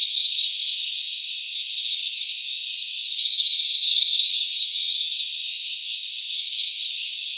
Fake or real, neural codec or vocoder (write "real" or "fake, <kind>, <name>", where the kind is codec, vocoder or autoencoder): fake, codec, SNAC